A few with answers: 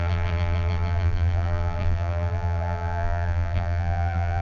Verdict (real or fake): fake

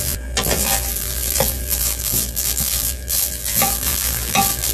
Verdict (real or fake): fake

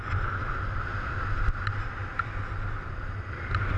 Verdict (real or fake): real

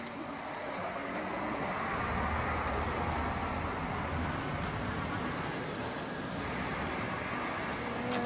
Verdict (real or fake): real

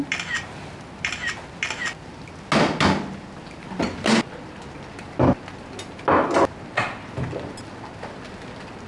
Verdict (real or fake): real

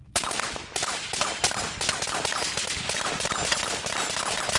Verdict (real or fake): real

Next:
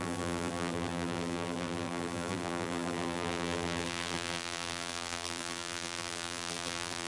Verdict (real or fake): fake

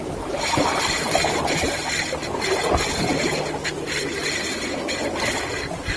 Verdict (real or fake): fake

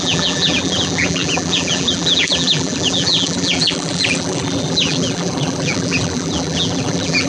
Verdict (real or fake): fake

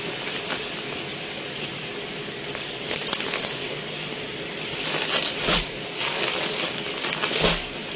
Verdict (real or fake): real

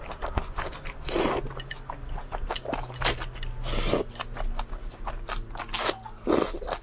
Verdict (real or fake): real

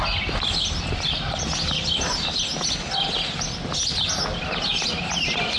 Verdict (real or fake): real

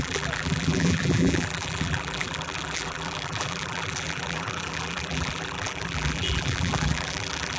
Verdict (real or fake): fake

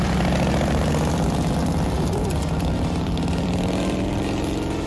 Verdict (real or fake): fake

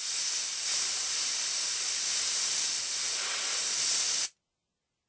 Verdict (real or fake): real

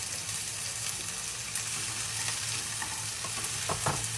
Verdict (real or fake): real